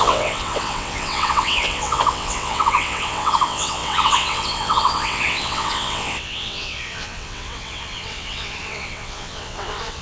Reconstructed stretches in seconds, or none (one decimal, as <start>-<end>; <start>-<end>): 0.0-10.0